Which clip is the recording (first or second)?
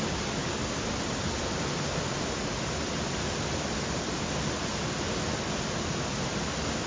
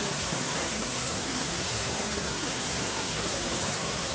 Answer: first